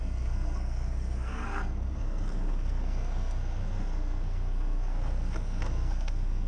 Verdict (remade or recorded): remade